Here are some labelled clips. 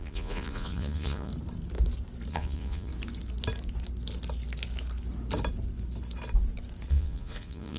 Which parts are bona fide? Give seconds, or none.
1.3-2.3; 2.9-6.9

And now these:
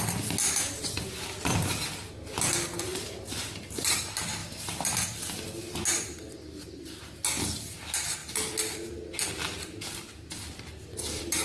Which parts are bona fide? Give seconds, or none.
0.0-11.4

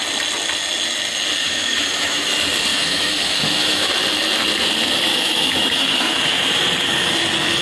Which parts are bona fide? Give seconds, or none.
0.0-1.4; 2.3-2.7; 3.9-5.1; 6.6-7.6

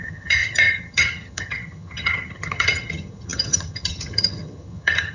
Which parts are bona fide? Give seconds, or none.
none